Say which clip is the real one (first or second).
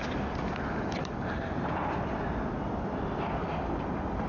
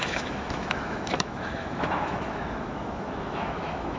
first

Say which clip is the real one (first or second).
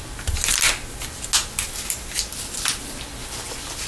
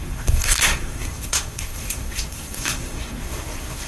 first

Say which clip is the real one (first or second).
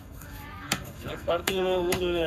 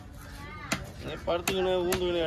second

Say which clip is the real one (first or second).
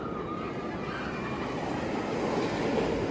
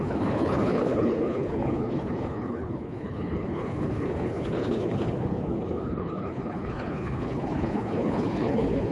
first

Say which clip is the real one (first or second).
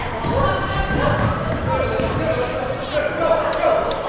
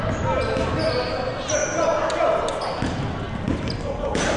second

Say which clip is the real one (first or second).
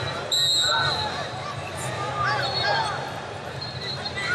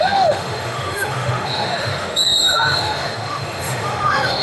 first